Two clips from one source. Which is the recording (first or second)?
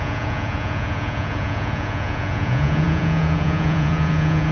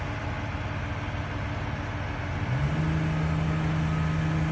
second